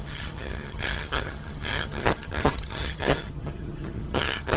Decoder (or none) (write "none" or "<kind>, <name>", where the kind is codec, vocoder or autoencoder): vocoder, HiFi-GAN